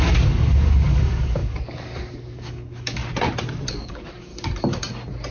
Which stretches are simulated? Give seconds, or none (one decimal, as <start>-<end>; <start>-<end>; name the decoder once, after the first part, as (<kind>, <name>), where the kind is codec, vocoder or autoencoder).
0.0-3.0 (codec, DAC); 3.7-4.3